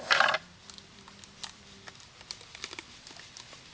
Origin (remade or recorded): recorded